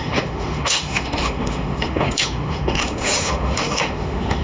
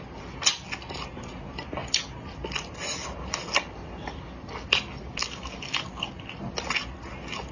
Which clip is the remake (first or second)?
first